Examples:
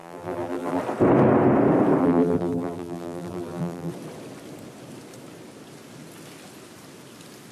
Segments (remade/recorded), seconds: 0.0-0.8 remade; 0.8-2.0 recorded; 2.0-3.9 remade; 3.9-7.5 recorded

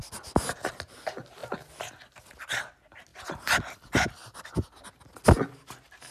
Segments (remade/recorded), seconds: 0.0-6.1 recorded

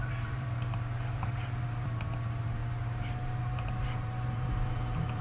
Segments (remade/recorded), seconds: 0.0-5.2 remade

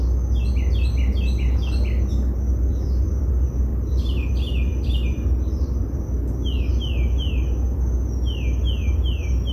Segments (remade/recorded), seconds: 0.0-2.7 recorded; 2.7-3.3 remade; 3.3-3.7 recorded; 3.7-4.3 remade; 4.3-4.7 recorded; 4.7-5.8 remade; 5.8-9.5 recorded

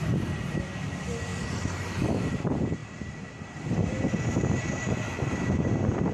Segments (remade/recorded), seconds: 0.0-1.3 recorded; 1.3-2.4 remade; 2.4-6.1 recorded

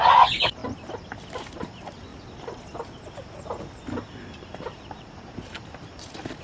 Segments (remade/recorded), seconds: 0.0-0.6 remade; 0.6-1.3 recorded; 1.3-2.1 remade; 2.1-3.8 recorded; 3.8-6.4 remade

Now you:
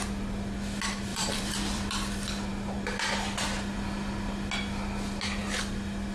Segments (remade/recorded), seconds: 0.0-1.1 recorded; 1.1-1.9 remade; 1.9-6.1 recorded